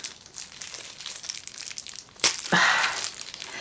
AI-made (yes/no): no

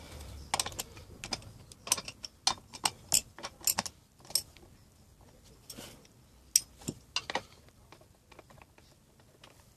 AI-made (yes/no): no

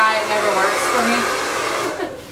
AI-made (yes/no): no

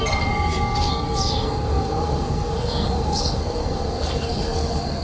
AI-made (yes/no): yes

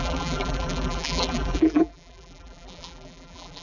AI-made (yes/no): yes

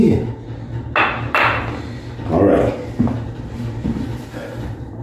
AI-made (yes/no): no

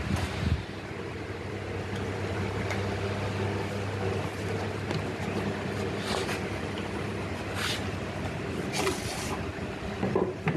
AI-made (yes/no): no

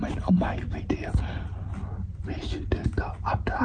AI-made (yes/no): no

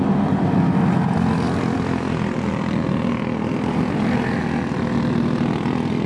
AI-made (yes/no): no